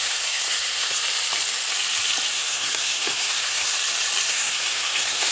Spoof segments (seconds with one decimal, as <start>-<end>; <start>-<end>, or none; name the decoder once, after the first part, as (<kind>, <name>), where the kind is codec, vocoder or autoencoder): 0.0-1.0 (codec, SNAC); 2.3-3.7; 4.3-5.3